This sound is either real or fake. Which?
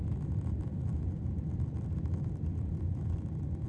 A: fake